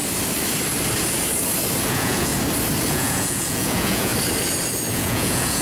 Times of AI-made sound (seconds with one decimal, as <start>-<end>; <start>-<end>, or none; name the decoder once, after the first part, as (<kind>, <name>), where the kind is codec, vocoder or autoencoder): 1.9-2.3 (vocoder, Vocos); 2.9-4.1; 4.9-5.6